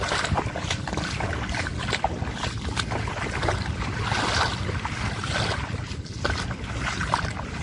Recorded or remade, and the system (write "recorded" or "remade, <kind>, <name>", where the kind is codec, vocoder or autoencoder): recorded